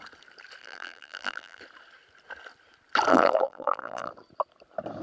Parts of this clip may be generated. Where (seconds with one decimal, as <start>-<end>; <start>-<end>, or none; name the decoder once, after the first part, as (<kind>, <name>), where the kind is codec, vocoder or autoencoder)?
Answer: 0.6-1.6 (vocoder, BigVGAN v2); 3.1-4.1